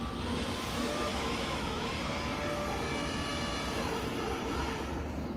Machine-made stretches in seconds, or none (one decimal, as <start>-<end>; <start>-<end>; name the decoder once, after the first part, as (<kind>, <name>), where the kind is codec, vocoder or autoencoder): 1.1-1.9 (autoencoder, DAC-VAE)